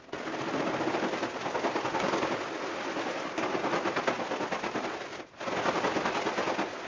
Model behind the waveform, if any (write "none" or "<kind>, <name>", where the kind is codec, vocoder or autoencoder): none